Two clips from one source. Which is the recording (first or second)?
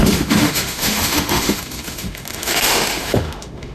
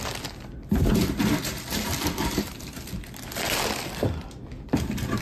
second